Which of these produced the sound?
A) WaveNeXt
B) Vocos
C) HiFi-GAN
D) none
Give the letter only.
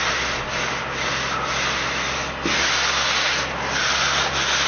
D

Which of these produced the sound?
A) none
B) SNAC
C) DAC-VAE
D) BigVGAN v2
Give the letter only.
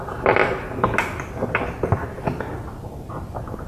A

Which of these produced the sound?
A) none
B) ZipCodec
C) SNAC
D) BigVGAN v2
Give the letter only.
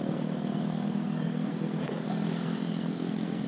C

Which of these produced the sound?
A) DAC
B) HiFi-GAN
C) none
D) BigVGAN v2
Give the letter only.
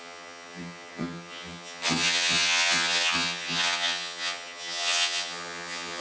B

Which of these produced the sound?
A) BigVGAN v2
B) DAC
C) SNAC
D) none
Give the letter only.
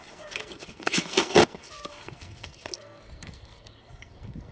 C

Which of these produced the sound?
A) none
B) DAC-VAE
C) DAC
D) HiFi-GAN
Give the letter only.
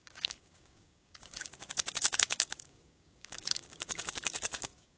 C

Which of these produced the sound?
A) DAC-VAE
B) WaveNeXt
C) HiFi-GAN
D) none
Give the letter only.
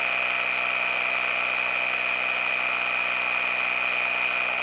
D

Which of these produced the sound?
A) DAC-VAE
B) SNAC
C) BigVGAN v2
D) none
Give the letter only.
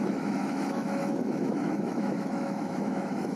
A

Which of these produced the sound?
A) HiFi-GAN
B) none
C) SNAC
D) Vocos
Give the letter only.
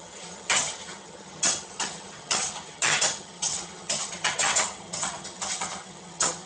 A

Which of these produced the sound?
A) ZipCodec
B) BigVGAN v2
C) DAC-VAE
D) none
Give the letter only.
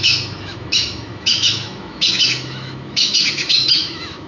C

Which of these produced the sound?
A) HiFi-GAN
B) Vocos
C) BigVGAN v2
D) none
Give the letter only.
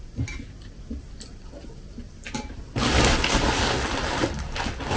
D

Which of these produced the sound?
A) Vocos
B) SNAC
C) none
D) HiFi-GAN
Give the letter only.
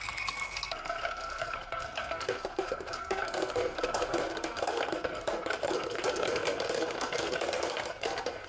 B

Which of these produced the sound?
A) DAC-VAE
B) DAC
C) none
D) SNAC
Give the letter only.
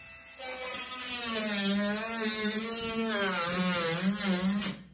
C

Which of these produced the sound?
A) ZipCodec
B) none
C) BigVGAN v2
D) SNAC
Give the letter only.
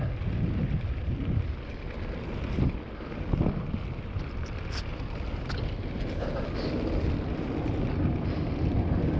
B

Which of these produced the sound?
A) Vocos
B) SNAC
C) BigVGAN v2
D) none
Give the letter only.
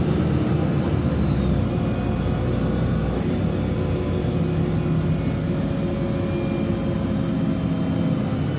D